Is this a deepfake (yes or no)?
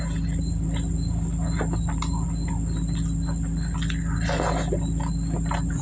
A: no